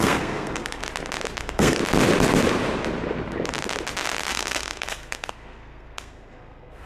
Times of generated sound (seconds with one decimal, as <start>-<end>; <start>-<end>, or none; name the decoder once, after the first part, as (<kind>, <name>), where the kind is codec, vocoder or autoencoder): 0.0-0.8 (codec, SNAC); 1.4-1.8; 4.3-6.9